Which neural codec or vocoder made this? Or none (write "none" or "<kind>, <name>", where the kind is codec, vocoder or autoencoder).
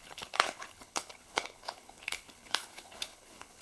codec, HILCodec